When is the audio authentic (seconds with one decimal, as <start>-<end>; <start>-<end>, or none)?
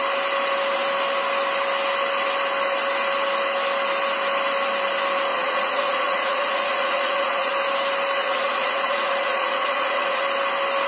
0.0-5.3; 7.5-8.2; 10.2-10.9